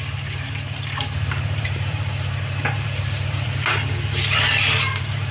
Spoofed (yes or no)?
yes